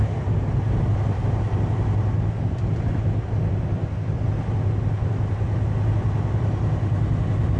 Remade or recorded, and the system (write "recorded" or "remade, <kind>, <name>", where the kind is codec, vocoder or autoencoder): recorded